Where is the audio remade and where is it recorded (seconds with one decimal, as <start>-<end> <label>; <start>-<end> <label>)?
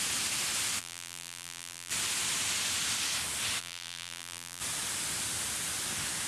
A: 0.0-0.8 recorded; 0.8-1.9 remade; 1.9-3.6 recorded; 3.6-4.6 remade; 4.6-6.3 recorded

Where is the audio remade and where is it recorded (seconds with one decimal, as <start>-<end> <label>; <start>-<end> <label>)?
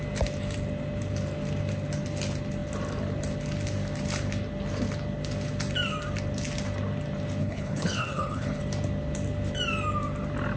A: 0.0-7.4 recorded; 7.4-8.6 remade; 8.6-10.6 recorded